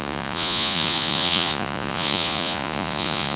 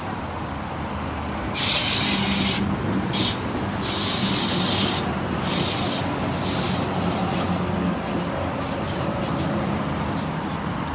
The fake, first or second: first